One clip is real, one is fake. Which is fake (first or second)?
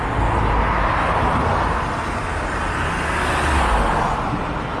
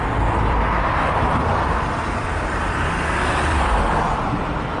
second